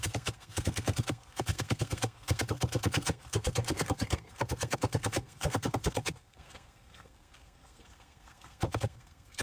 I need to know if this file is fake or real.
fake